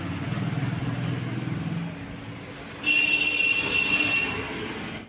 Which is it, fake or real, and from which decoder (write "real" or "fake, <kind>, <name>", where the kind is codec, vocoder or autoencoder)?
real